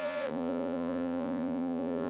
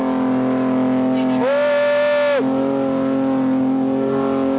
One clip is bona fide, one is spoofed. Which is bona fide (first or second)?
second